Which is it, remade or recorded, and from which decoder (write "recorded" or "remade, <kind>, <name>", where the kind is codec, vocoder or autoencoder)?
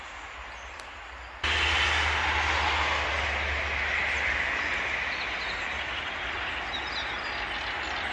recorded